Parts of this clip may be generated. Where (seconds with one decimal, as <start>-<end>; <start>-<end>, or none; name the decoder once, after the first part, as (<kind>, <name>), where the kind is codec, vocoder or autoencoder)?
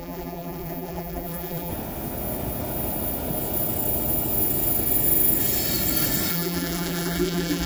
0.0-1.7 (vocoder, BigVGAN v2); 6.3-7.7